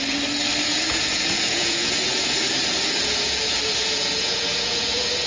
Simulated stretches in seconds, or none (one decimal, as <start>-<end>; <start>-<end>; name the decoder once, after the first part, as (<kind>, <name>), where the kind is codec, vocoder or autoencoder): 0.7-5.3 (vocoder, Vocos)